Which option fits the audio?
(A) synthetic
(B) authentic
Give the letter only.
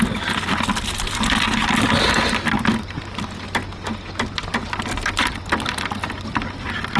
B